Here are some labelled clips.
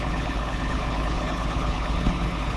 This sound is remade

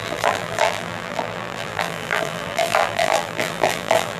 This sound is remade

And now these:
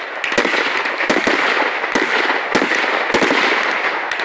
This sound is recorded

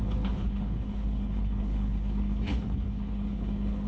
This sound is remade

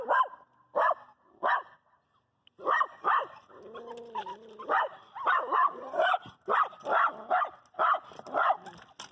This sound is recorded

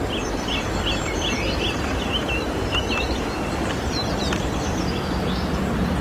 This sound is remade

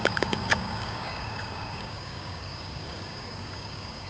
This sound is remade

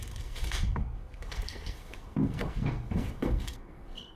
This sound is remade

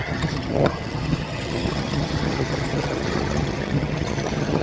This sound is remade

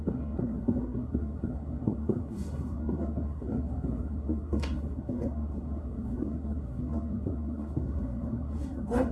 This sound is remade